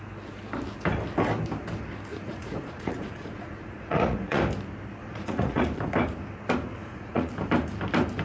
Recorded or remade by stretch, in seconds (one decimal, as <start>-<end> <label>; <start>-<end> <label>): 0.0-2.1 recorded; 2.1-4.4 remade; 4.4-5.0 recorded; 5.0-5.6 remade; 5.6-6.8 recorded; 6.8-7.3 remade; 7.3-8.2 recorded